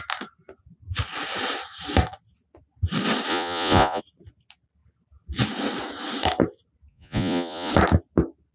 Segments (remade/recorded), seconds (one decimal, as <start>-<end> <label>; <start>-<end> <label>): 0.0-3.3 recorded; 3.3-4.0 remade; 4.0-6.9 recorded; 6.9-7.7 remade; 7.7-8.5 recorded